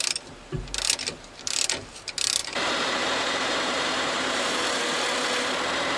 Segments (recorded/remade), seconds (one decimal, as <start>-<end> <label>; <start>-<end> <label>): 0.0-2.4 recorded; 2.4-4.8 remade; 4.8-6.0 recorded